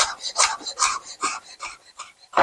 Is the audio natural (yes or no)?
no